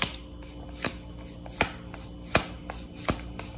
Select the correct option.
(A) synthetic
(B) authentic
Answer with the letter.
B